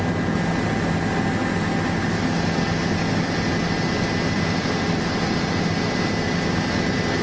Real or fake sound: real